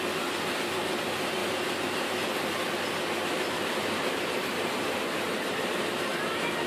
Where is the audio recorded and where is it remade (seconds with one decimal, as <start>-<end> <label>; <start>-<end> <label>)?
0.0-6.1 recorded; 6.1-6.7 remade